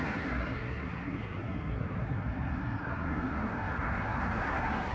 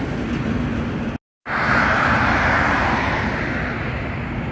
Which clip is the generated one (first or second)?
first